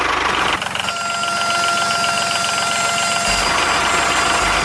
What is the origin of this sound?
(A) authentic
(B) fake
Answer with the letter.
A